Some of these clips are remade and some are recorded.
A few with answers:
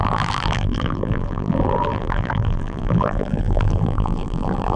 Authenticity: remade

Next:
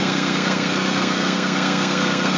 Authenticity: remade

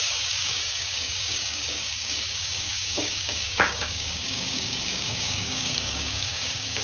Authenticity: remade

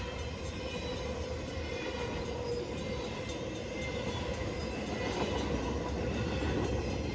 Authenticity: recorded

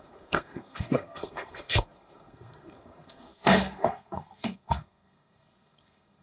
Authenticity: remade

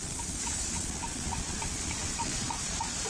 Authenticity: remade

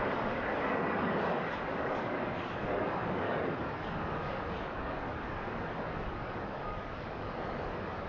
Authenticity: remade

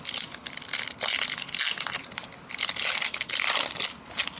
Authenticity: recorded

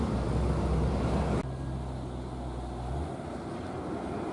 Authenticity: recorded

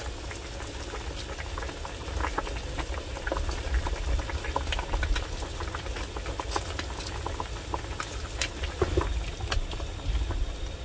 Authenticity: recorded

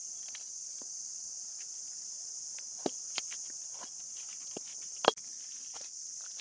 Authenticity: recorded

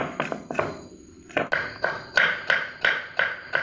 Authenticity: recorded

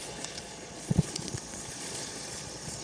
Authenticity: remade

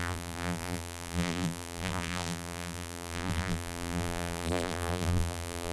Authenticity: remade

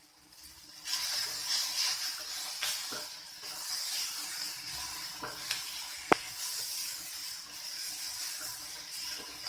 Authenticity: recorded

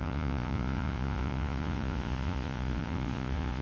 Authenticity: remade